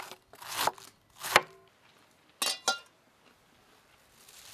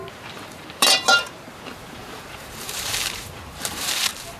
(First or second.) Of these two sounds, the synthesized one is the second